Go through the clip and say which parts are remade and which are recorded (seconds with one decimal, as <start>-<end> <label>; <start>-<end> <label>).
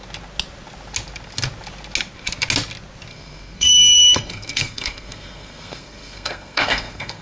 0.0-3.1 recorded; 3.1-7.2 remade